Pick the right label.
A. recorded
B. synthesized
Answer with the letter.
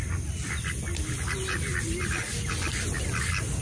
A